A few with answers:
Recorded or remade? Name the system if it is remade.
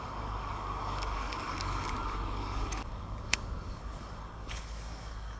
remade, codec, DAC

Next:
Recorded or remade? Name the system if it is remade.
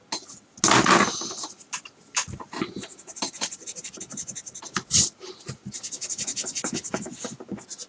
recorded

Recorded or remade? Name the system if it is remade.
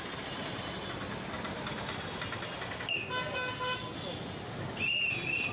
recorded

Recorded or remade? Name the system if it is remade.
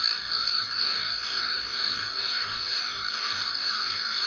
remade, codec, DAC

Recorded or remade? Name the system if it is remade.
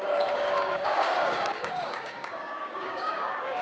remade, codec, DAC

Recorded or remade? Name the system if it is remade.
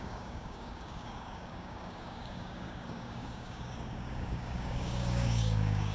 remade, codec, DAC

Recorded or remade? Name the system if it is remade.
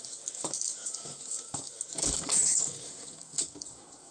remade, codec, DAC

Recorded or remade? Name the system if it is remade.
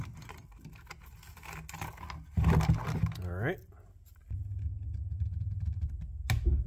recorded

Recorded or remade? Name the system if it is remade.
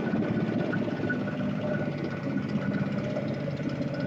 recorded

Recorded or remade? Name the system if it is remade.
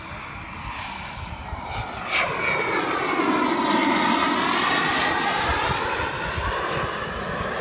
recorded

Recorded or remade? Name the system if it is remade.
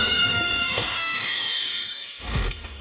remade, codec, DAC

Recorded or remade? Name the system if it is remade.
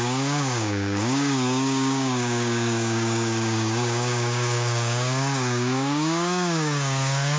remade, codec, DAC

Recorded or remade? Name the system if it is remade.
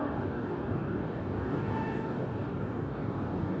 remade, codec, DAC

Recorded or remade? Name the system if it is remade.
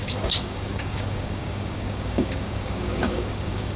remade, codec, DAC